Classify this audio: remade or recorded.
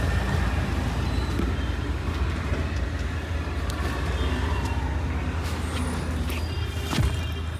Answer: recorded